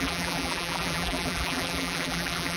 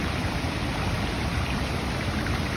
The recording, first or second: second